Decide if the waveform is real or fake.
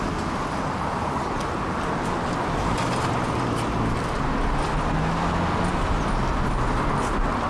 real